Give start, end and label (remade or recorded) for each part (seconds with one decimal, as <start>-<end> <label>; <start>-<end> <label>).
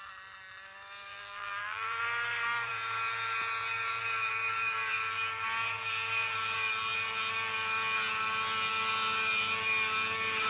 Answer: 0.0-1.1 recorded; 1.1-2.0 remade; 2.0-10.5 recorded